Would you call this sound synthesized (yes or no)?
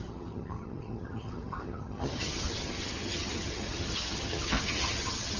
yes